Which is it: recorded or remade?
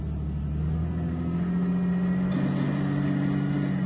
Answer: recorded